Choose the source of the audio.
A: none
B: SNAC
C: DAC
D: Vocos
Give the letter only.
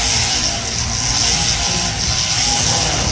A